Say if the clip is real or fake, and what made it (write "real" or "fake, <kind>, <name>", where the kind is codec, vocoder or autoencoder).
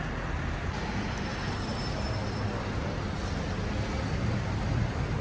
real